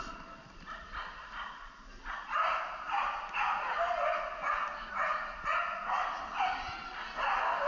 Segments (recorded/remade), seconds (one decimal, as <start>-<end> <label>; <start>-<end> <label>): 0.0-7.7 recorded